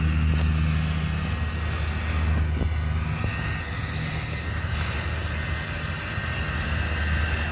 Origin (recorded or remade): recorded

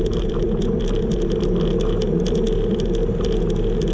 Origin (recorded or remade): recorded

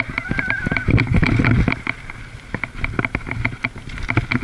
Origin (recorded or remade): recorded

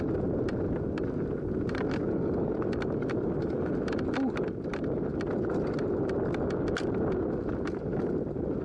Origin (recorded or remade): recorded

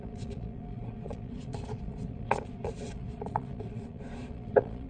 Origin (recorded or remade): remade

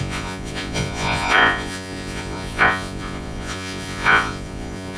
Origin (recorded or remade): remade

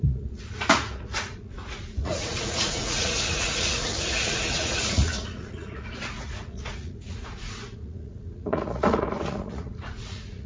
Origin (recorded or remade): remade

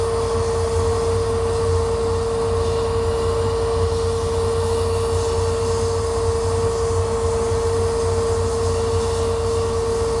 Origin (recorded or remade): recorded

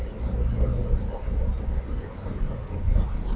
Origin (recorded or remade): recorded